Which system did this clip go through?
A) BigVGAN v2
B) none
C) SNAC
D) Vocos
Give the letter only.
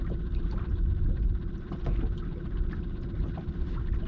B